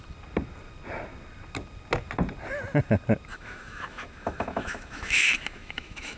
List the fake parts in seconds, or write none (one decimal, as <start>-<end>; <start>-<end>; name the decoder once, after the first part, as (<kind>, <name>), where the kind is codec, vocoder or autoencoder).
3.3-6.2 (autoencoder, DAC-VAE)